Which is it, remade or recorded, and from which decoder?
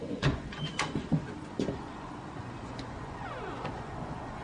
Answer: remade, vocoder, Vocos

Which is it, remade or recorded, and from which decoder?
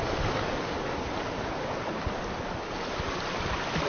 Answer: recorded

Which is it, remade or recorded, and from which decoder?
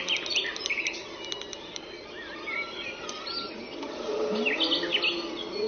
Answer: recorded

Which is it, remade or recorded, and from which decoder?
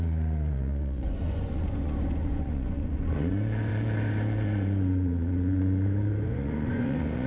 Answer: remade, vocoder, Vocos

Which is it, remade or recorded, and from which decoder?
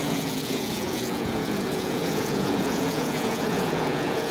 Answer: remade, vocoder, Vocos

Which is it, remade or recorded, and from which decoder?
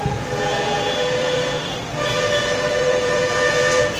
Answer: remade, vocoder, Vocos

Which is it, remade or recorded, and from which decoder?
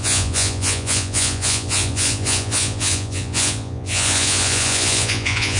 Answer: remade, vocoder, Vocos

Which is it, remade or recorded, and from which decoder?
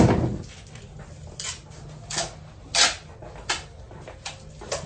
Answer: recorded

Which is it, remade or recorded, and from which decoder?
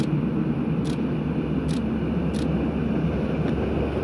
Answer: recorded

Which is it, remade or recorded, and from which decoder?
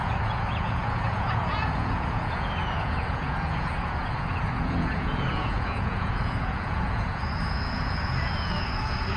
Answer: remade, vocoder, Vocos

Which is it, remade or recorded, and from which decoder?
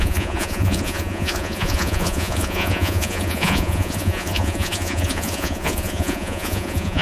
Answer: remade, vocoder, Vocos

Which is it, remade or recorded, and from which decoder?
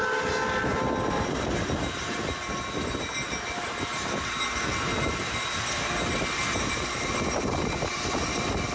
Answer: recorded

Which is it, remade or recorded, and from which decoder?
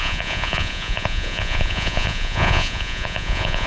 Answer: remade, vocoder, Vocos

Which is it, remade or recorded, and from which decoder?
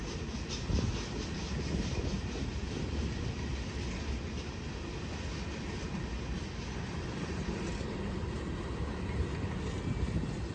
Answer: recorded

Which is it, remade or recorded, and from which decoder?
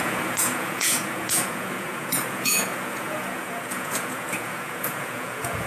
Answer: remade, vocoder, Vocos